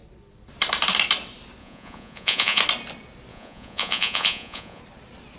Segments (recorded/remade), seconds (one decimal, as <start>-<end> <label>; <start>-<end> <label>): 0.0-1.6 recorded; 1.6-2.6 remade; 2.6-3.3 recorded; 3.3-4.8 remade; 4.8-5.4 recorded